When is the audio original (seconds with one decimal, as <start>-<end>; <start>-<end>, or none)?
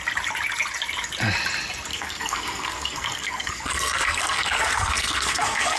0.0-1.9